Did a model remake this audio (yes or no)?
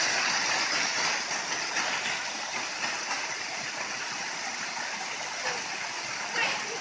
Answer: no